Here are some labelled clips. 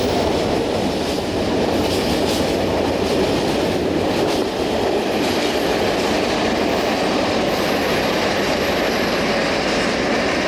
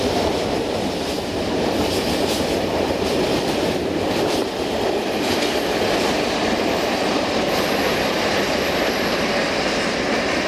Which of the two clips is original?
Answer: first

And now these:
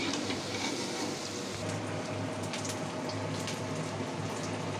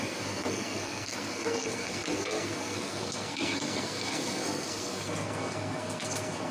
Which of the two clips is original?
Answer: first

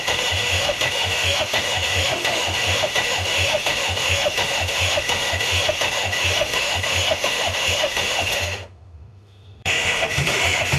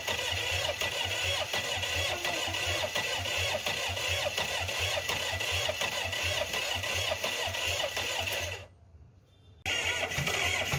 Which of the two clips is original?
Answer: second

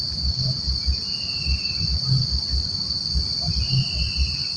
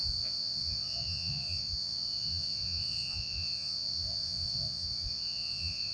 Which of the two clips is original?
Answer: first